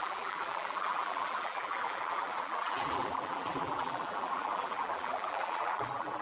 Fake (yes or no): yes